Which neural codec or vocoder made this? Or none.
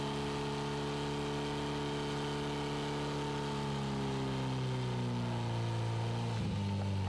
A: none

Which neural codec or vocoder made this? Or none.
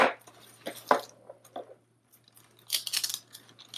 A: none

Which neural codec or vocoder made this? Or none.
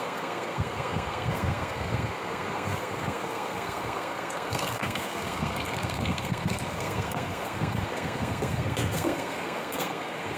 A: codec, SNAC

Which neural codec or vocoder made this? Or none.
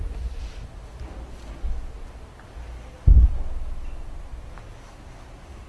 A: none